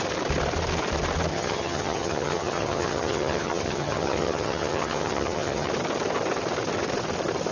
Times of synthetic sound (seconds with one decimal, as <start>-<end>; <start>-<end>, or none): 1.3-5.7